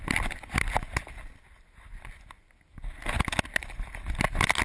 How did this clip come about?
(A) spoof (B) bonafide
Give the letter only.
B